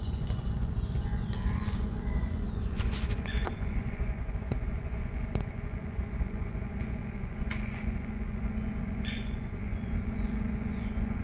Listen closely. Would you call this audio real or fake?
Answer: fake